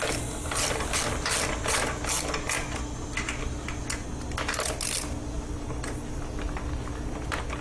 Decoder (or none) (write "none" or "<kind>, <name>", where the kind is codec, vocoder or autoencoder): none